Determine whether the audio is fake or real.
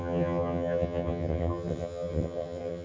fake